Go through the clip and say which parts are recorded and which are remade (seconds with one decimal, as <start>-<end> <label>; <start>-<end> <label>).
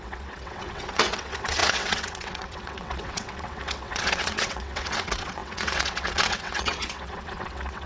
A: 0.0-7.9 remade